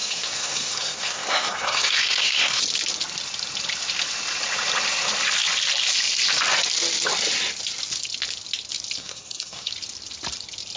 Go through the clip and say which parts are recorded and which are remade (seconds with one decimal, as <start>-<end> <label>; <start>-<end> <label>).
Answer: 0.0-2.6 remade; 2.6-9.0 recorded; 9.0-9.7 remade; 9.7-10.8 recorded